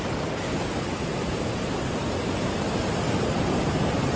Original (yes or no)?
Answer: yes